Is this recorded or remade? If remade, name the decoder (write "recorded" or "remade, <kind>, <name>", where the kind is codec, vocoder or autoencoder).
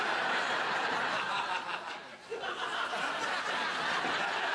recorded